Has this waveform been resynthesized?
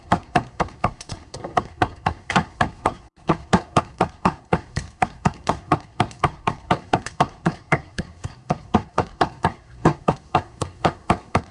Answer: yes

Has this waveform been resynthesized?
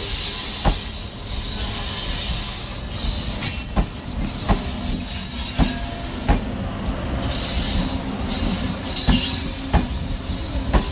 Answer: no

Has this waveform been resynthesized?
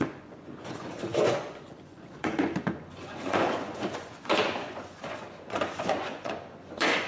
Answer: yes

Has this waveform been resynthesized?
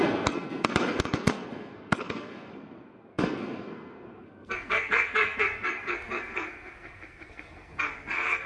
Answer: yes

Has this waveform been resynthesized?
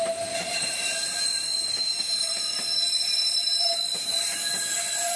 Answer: yes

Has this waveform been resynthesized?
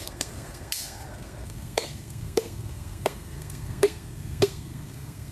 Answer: yes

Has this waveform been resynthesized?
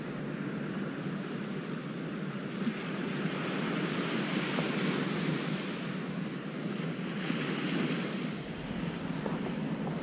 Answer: no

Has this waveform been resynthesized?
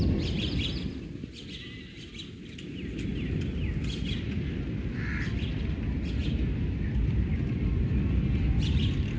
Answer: no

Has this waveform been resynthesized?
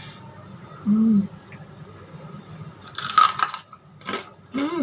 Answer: no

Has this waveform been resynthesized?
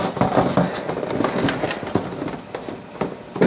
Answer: no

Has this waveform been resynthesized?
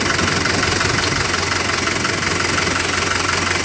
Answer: no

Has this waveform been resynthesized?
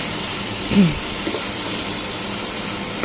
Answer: no